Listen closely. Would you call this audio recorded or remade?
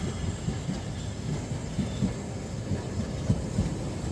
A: recorded